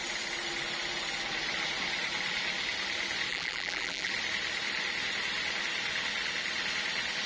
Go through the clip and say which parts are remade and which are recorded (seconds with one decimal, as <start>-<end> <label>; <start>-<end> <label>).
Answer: 0.0-3.3 recorded; 3.3-4.1 remade; 4.1-7.3 recorded